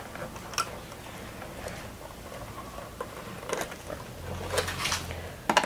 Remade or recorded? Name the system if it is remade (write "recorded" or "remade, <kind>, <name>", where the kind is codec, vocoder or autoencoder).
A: recorded